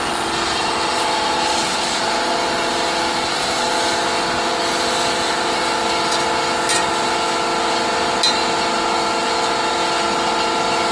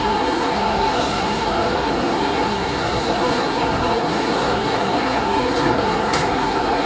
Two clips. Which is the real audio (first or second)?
first